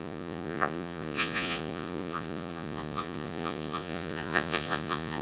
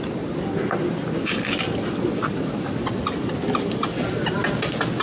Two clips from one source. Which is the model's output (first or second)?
first